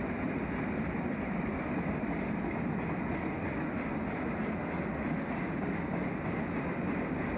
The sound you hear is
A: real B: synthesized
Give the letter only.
A